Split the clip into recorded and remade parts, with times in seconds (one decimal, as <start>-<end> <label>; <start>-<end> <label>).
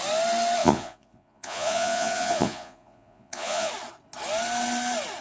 0.0-0.6 recorded; 0.6-3.7 remade; 3.7-5.2 recorded